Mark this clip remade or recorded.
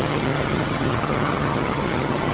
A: remade